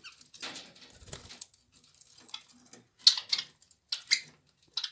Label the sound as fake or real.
real